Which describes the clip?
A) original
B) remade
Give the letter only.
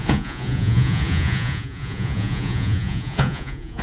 B